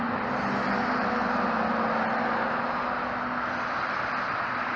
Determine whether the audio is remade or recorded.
recorded